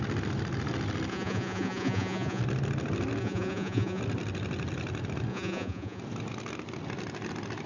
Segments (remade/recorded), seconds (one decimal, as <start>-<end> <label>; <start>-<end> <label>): 0.0-1.1 recorded; 1.1-2.4 remade; 2.4-3.2 recorded; 3.2-4.0 remade; 4.0-5.3 recorded; 5.3-6.0 remade; 6.0-7.7 recorded